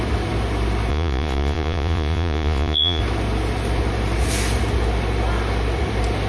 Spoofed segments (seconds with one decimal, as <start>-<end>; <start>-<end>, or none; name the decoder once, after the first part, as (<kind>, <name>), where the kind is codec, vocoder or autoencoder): 0.9-3.0 (vocoder, Vocos)